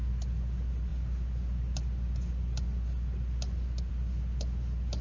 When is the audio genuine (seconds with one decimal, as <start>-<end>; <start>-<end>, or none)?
0.0-5.0